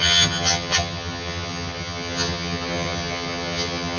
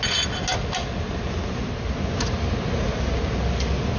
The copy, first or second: first